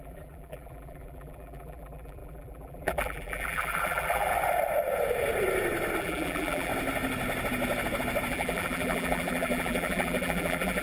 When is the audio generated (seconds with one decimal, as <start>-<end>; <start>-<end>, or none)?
0.0-4.3; 6.0-6.7; 8.3-10.8